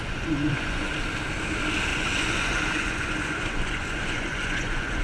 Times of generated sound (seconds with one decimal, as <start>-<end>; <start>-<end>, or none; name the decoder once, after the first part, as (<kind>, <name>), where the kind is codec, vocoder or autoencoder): 0.0-0.9 (vocoder, Vocos); 1.9-5.0